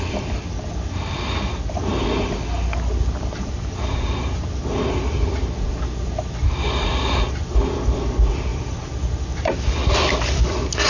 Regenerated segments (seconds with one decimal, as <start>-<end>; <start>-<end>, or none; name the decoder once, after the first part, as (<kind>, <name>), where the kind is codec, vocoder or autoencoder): 8.5-9.5 (vocoder, BigVGAN v2)